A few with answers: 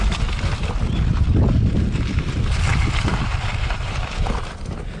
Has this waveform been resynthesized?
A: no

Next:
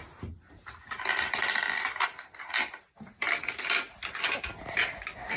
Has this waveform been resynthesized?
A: no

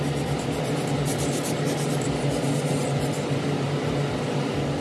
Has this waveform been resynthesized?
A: no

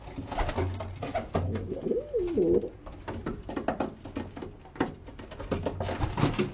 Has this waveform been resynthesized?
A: no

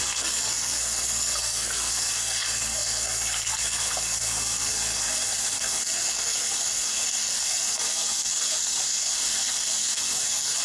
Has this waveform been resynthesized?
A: yes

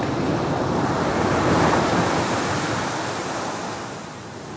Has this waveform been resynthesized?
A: no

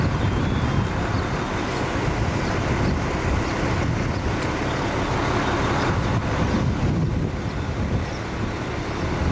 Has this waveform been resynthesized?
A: no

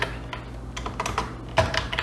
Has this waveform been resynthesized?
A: no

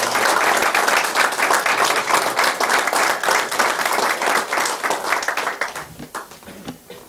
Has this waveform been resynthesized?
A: no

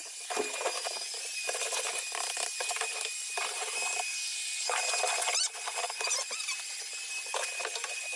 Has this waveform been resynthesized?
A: no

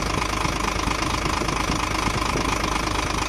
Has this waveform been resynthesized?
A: no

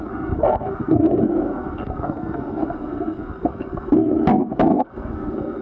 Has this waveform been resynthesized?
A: yes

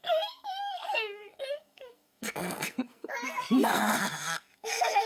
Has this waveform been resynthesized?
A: yes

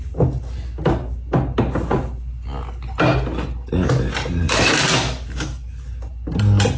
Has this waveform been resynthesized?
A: no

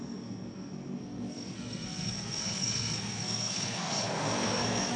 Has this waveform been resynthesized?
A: yes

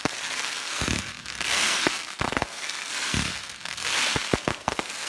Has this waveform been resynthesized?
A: yes